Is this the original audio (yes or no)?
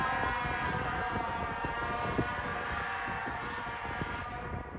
yes